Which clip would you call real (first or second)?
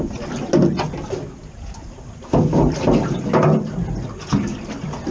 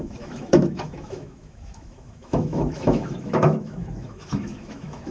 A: first